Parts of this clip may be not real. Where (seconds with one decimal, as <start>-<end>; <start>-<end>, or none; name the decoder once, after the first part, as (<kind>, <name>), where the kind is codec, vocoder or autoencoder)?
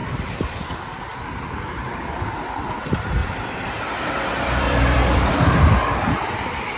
0.0-1.4 (vocoder, BigVGAN v2); 3.2-5.3